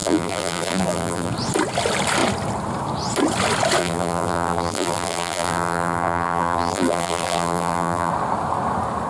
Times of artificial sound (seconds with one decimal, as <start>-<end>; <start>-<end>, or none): 0.0-1.3; 3.8-8.1